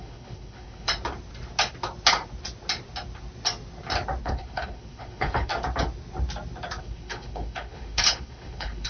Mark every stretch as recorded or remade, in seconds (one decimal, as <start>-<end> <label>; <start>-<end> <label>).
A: 0.0-0.9 remade; 0.9-4.2 recorded; 4.2-5.5 remade; 5.5-6.8 recorded; 6.8-8.9 remade